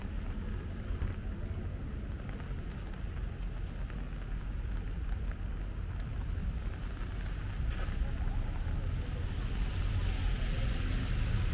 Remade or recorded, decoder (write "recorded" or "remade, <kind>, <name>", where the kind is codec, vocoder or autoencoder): recorded